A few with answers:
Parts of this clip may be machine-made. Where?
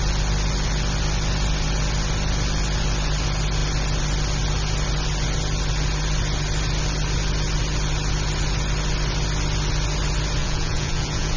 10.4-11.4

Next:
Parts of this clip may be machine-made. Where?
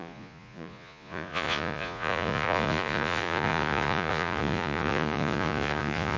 0.0-6.2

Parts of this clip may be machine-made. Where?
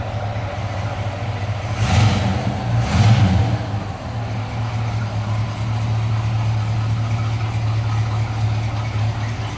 none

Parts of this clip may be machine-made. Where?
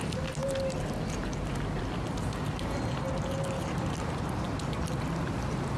none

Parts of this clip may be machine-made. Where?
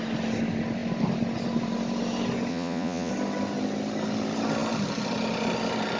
2.5-3.1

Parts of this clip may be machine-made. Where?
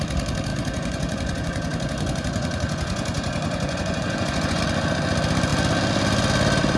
0.5-4.6